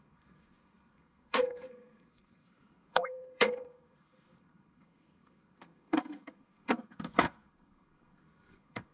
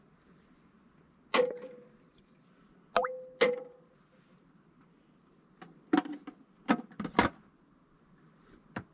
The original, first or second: second